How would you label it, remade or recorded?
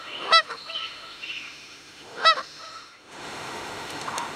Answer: remade